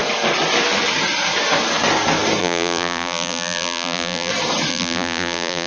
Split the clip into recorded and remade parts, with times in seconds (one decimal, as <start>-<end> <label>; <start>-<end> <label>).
0.0-2.4 recorded; 2.4-4.3 remade; 4.3-4.7 recorded; 4.7-5.7 remade